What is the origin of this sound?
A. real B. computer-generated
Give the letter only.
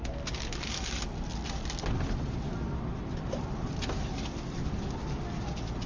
A